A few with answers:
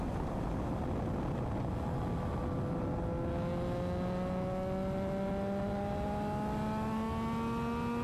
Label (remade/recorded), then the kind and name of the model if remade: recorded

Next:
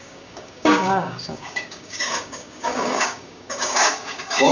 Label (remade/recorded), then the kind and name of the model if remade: remade, codec, DAC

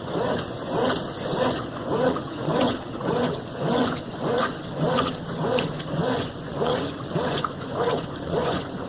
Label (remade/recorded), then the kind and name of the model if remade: remade, vocoder, Vocos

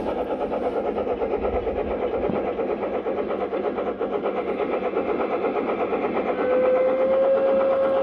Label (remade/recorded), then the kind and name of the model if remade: recorded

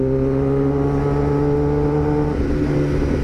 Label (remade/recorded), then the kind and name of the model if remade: recorded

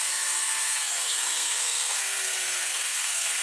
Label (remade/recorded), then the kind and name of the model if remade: remade, codec, SNAC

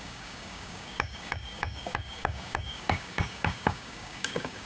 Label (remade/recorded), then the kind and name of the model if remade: remade, codec, DAC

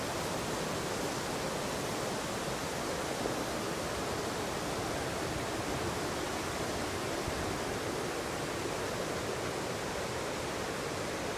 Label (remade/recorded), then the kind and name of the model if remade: recorded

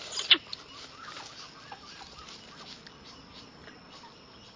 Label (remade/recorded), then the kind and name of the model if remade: recorded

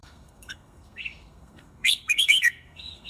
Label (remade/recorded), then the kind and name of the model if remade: remade, codec, SNAC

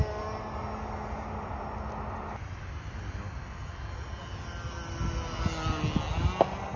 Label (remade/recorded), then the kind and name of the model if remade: recorded